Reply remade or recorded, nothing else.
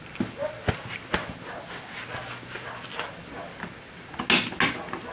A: recorded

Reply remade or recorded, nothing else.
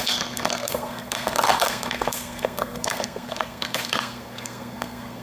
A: remade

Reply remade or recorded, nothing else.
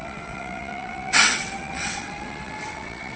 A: remade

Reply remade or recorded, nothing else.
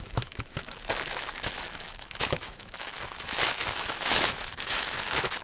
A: remade